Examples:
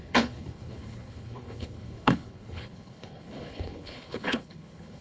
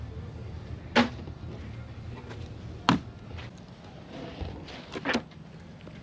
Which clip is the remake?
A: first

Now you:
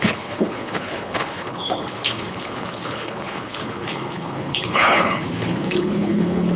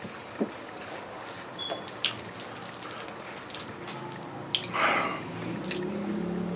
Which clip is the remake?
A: first